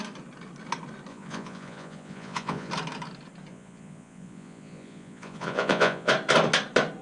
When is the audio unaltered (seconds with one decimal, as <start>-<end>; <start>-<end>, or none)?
0.0-1.1; 2.7-3.5; 6.1-7.0